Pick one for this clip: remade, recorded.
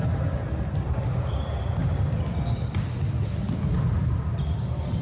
recorded